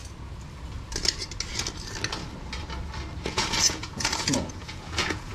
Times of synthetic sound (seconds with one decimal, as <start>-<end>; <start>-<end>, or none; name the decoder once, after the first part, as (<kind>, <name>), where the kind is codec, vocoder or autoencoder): 3.2-5.3 (vocoder, Vocos)